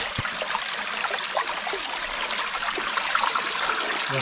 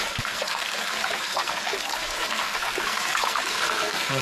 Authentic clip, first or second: first